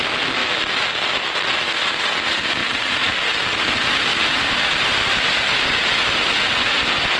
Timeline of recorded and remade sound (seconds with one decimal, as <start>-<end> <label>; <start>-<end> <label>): 0.0-7.2 recorded